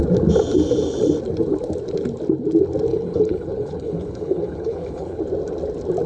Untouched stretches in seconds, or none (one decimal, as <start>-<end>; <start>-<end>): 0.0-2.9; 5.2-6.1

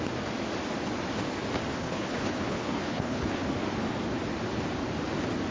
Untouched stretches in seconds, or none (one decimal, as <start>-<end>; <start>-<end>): 0.0-1.7; 3.5-5.5

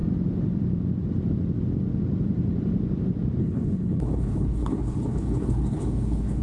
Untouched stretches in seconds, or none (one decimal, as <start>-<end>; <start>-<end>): 0.0-3.4

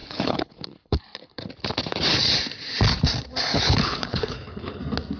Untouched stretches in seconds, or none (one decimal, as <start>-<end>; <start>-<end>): 1.5-3.5; 4.8-5.2

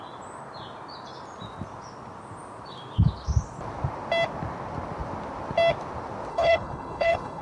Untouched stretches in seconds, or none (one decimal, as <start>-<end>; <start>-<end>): 0.0-6.3

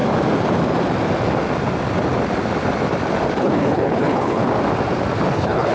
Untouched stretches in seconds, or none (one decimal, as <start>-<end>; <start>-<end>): 0.0-3.4; 4.4-5.3

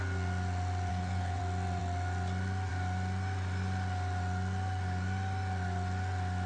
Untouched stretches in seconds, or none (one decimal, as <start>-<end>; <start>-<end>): 0.0-0.9; 1.4-6.5

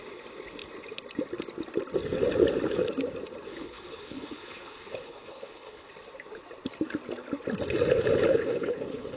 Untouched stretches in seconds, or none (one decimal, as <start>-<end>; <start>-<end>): 0.0-3.5; 5.9-8.3